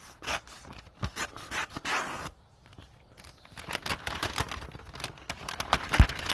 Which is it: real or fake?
real